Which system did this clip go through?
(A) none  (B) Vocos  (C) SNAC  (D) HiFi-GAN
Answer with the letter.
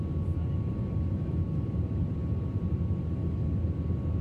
A